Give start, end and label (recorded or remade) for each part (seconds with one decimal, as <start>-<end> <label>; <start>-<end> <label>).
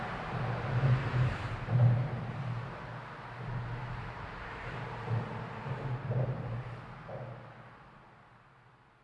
0.0-1.1 recorded; 1.1-2.7 remade; 2.7-3.8 recorded; 3.8-5.5 remade; 5.5-9.0 recorded